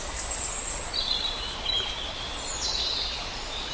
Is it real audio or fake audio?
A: real